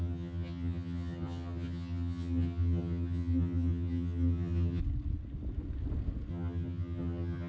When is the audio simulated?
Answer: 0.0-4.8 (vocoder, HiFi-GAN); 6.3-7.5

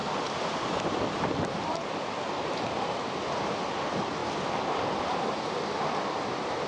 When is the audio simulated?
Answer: 0.0-4.2 (vocoder, BigVGAN v2); 5.0-6.7

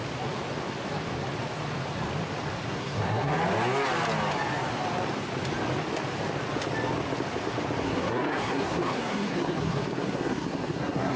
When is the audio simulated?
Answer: 2.7-3.3 (codec, SNAC); 7.8-11.2

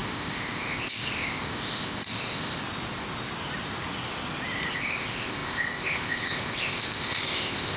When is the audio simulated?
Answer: 0.0-2.6 (codec, ZipCodec); 4.7-7.8